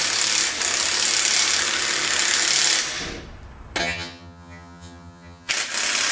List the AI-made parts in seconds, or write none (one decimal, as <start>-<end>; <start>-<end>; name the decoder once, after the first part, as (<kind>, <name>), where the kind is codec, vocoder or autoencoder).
3.8-5.5 (vocoder, HiFi-GAN)